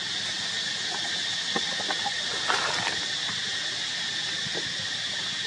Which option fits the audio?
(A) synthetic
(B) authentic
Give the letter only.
B